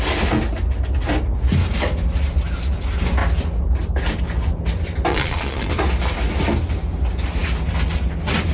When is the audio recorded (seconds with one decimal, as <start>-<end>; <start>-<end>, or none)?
0.0-5.1; 5.7-8.5